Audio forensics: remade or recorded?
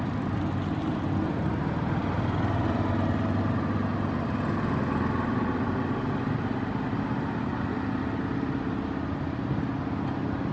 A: recorded